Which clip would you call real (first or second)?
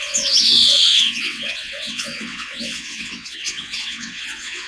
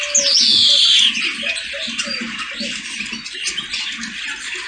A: second